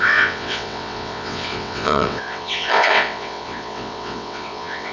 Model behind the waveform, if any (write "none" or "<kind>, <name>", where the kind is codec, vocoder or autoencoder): vocoder, WaveNeXt